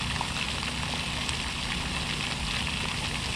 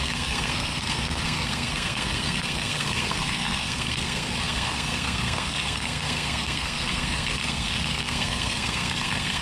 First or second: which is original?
first